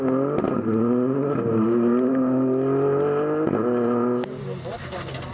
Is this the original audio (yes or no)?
yes